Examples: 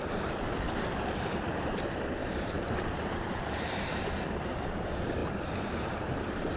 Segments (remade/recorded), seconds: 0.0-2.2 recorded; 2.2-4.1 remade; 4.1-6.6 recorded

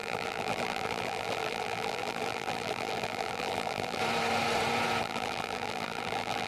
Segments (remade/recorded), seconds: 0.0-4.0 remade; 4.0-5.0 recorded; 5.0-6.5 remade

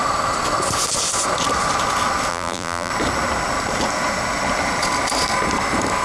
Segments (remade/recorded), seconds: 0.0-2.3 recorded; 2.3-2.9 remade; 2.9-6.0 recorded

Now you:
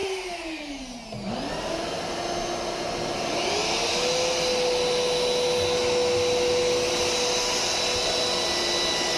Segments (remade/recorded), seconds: 0.0-0.8 remade; 0.8-9.2 recorded

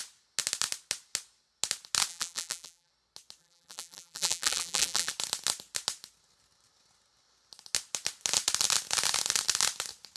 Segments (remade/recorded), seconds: 0.0-2.1 recorded; 2.1-2.9 remade; 2.9-3.4 recorded; 3.4-5.1 remade; 5.1-10.2 recorded

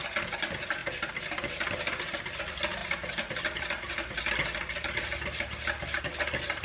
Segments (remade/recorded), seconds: 0.0-6.6 recorded

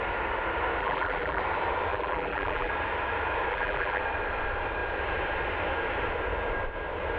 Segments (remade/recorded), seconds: 0.0-0.8 recorded; 0.8-1.4 remade; 1.4-1.9 recorded; 1.9-2.7 remade; 2.7-3.5 recorded; 3.5-4.0 remade; 4.0-7.2 recorded

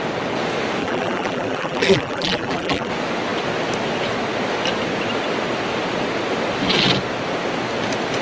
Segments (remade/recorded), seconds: 0.0-0.8 recorded; 0.8-2.9 remade; 2.9-8.2 recorded